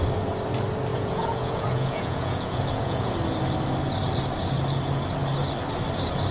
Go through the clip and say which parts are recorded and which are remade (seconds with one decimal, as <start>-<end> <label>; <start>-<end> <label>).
0.0-0.9 recorded; 0.9-3.1 remade; 3.1-6.3 recorded